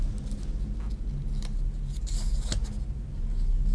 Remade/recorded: recorded